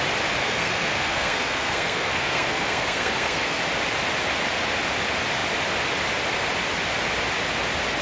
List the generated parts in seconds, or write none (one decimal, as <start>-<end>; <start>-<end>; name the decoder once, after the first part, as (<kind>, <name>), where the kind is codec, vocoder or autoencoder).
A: 0.4-3.6 (codec, SNAC)

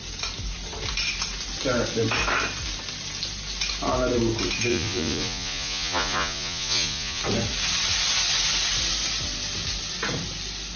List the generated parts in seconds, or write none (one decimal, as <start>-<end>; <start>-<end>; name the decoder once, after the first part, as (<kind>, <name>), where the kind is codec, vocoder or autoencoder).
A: 4.7-7.2 (vocoder, Vocos)

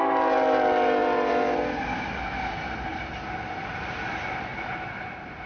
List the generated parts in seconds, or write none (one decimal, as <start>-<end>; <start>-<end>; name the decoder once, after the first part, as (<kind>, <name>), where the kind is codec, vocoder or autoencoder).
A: 1.0-1.8 (vocoder, BigVGAN v2); 2.9-3.6; 4.5-5.5

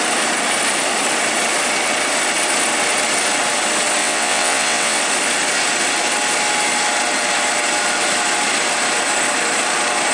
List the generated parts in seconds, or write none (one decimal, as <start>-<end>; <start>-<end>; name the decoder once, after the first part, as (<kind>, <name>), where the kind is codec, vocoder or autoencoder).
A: 4.0-5.0 (vocoder, WaveNeXt)